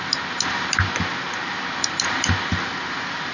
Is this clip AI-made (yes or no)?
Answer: no